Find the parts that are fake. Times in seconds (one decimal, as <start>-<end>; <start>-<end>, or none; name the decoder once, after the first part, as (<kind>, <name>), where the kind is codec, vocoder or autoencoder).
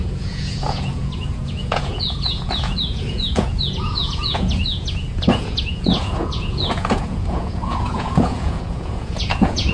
0.0-9.7 (vocoder, Vocos)